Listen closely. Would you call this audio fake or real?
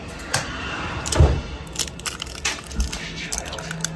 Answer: real